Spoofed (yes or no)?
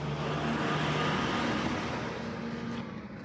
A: no